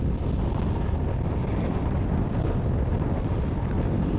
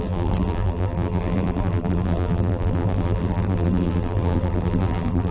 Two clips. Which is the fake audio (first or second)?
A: second